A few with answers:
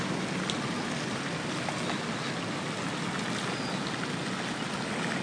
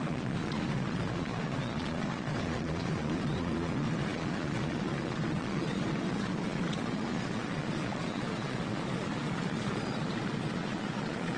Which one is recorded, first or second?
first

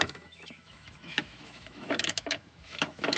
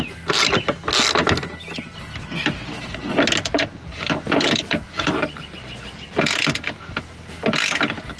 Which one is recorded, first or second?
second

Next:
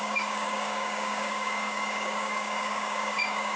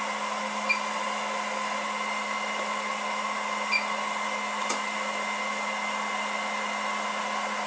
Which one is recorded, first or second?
second